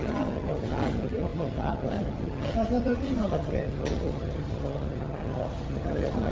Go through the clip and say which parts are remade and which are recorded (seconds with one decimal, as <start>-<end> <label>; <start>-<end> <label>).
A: 0.0-6.3 remade